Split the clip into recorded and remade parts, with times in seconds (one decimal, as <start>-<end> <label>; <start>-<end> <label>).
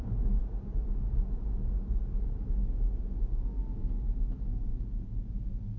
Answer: 0.0-4.7 recorded; 4.7-5.3 remade; 5.3-5.8 recorded